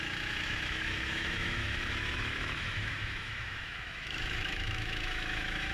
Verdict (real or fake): fake